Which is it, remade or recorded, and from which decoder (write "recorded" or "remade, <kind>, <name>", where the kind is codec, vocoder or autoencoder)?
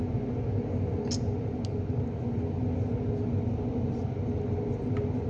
recorded